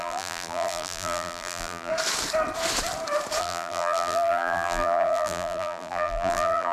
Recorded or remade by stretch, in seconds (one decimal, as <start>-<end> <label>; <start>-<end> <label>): 0.0-1.9 remade; 1.9-3.4 recorded; 3.4-6.7 remade